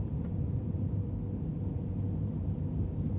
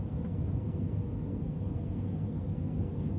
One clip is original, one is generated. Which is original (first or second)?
first